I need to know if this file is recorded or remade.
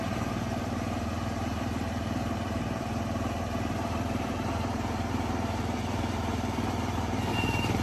remade